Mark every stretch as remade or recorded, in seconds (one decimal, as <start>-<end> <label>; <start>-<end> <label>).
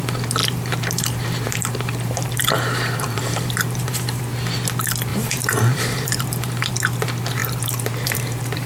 0.0-0.4 recorded; 0.4-4.2 remade; 4.2-5.1 recorded; 5.1-6.7 remade; 6.7-7.4 recorded; 7.4-8.7 remade